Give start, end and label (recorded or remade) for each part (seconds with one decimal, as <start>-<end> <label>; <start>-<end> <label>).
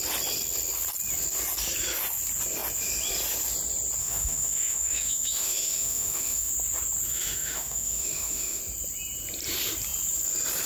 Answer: 0.0-4.0 recorded; 4.0-6.5 remade; 6.5-7.1 recorded; 7.1-8.6 remade; 8.6-10.7 recorded